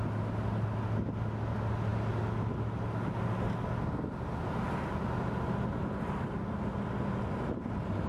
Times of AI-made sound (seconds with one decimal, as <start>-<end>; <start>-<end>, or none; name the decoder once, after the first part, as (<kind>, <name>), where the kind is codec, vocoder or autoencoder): none